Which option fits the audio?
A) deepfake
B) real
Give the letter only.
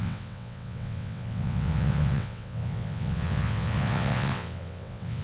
A